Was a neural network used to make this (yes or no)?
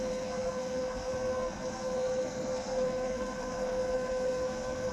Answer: yes